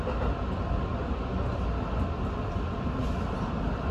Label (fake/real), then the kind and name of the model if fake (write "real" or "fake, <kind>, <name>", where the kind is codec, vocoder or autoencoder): real